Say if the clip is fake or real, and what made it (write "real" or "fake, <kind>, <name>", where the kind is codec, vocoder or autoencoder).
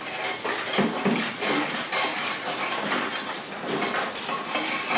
real